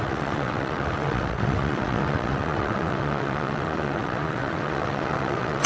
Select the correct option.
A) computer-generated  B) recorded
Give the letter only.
A